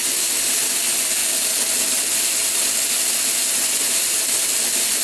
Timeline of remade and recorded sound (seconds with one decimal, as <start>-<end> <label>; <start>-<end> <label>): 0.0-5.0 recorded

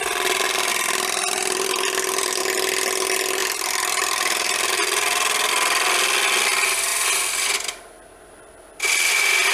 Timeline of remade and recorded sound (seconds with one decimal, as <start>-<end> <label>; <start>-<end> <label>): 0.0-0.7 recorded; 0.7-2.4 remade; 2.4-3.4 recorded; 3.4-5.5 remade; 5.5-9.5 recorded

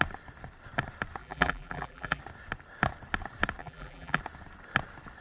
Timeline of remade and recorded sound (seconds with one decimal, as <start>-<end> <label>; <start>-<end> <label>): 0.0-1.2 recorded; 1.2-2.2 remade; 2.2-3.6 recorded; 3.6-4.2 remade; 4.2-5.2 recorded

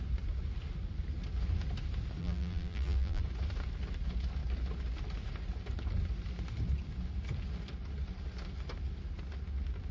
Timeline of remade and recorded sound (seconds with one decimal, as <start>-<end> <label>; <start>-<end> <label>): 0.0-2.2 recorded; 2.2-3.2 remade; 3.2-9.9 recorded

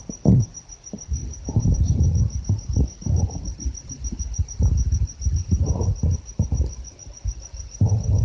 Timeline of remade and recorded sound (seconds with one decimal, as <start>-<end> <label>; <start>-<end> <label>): 0.0-1.2 recorded; 1.2-1.7 remade; 1.7-8.2 recorded